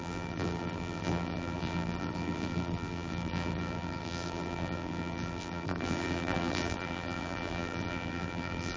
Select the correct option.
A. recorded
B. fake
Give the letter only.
B